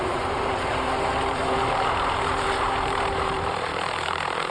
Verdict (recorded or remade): remade